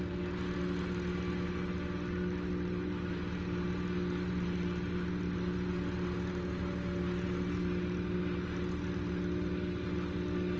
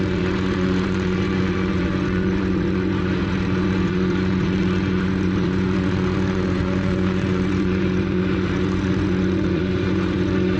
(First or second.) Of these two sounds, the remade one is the second